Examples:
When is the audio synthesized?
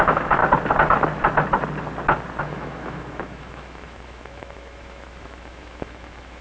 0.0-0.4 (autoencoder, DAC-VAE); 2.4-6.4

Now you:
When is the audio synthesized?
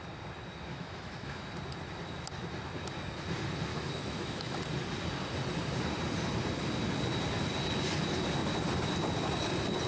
0.7-1.5 (autoencoder, DAC-VAE); 3.7-4.6